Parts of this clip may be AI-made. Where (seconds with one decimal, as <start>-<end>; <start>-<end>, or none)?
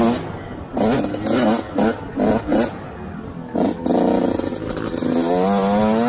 none